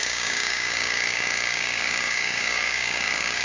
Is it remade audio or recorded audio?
remade